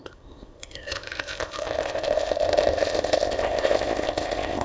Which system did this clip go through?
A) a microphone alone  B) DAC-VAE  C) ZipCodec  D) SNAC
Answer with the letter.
C